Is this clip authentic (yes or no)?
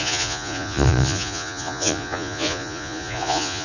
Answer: no